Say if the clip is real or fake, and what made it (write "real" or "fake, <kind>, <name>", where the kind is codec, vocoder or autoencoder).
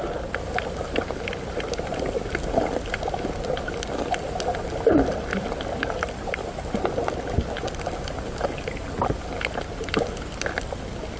real